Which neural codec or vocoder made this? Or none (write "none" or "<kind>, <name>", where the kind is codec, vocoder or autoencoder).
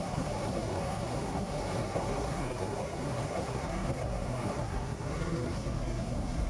codec, SNAC